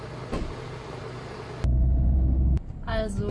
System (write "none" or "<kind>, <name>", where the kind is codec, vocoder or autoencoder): none